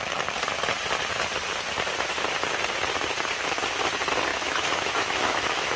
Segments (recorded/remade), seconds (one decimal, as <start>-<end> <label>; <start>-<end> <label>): 0.0-4.3 recorded; 4.3-5.8 remade